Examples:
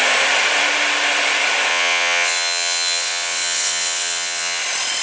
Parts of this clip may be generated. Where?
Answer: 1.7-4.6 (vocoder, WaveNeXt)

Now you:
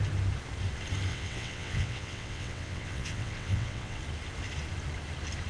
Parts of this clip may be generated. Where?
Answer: 1.1-4.0 (vocoder, WaveNeXt)

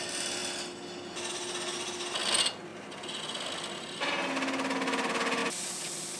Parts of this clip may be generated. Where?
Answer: none

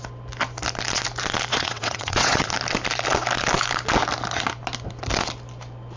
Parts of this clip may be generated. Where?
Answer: 1.5-2.5 (vocoder, WaveNeXt)

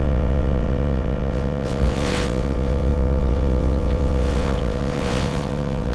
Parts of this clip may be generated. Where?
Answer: 0.0-5.9 (vocoder, WaveNeXt)

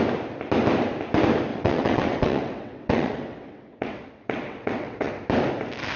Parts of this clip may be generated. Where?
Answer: 1.5-5.1 (vocoder, WaveNeXt)

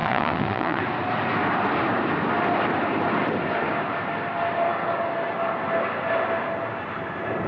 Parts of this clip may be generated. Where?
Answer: 0.0-0.8 (vocoder, WaveNeXt)

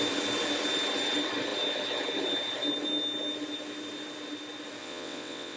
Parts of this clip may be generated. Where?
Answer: 4.8-5.6 (vocoder, WaveNeXt)